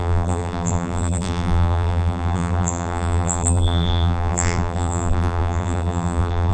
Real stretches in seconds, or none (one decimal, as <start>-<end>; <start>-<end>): none